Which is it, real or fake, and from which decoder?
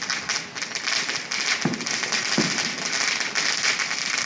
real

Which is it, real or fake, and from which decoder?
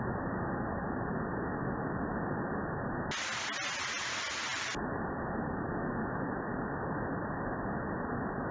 real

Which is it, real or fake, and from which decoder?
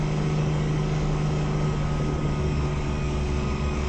fake, codec, DAC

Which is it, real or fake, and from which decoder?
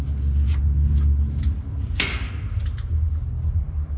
real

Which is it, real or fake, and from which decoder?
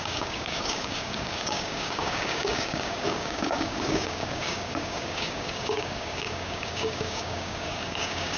fake, codec, DAC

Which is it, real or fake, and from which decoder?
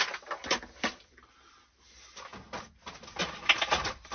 real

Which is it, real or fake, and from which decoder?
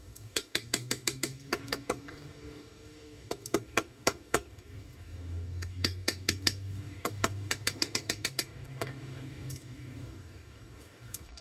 fake, codec, DAC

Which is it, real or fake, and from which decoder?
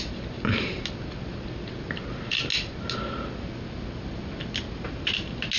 real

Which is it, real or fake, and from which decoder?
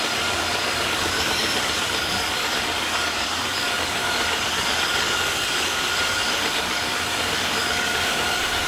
fake, codec, DAC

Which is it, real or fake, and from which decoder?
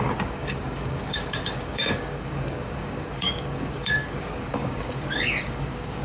fake, codec, DAC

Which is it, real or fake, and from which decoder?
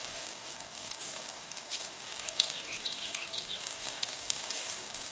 fake, codec, DAC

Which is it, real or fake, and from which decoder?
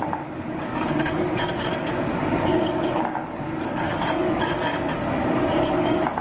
fake, codec, DAC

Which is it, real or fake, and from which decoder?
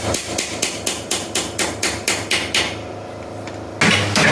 real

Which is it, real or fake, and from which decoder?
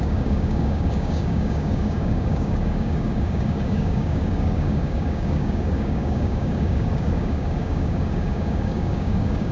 fake, codec, DAC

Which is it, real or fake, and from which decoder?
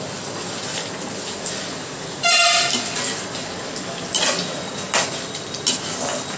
real